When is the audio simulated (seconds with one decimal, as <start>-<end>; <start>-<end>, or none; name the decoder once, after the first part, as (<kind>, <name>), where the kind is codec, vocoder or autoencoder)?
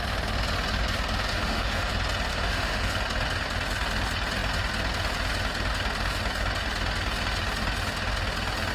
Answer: 1.3-1.9 (autoencoder, DAC-VAE); 2.3-2.9